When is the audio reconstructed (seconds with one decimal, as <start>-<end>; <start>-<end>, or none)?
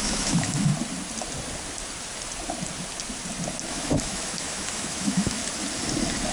0.0-0.7; 3.7-5.4